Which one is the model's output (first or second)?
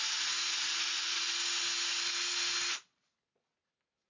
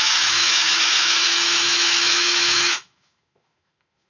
second